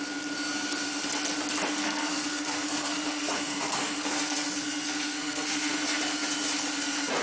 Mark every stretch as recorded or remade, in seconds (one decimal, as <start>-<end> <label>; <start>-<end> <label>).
0.0-1.7 recorded; 1.7-6.0 remade; 6.0-7.2 recorded